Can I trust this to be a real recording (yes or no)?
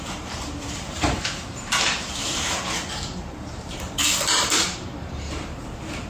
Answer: no